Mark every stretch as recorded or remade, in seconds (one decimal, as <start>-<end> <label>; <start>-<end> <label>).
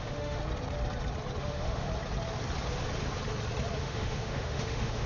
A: 0.0-0.4 remade; 0.4-1.4 recorded; 1.4-1.9 remade; 1.9-3.8 recorded; 3.8-5.1 remade